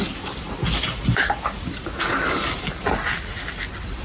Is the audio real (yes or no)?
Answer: yes